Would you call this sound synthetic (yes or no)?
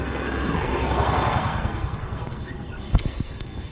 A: yes